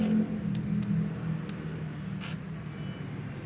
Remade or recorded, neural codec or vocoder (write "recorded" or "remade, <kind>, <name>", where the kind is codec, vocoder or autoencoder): recorded